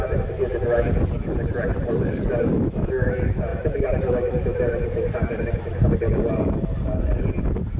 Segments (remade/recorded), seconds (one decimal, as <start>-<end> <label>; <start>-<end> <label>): 0.0-0.4 remade; 0.4-2.5 recorded; 2.5-5.7 remade; 5.7-7.8 recorded

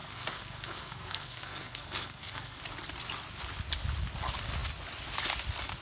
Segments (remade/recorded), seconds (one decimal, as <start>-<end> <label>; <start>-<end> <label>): 0.0-2.6 remade; 2.6-5.8 recorded